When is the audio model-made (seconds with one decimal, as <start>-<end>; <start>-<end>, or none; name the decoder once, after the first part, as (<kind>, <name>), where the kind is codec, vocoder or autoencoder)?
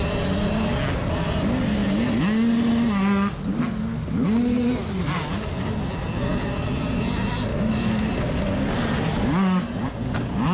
7.5-8.1 (autoencoder, DAC-VAE)